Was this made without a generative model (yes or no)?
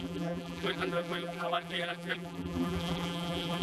no